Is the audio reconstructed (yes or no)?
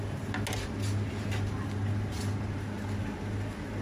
no